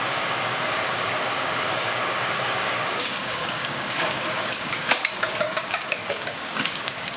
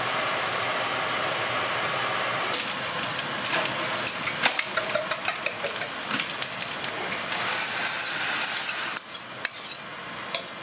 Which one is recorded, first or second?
second